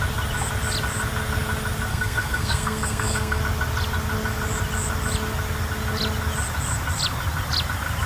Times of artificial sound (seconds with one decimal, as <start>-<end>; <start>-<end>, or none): 1.9-3.4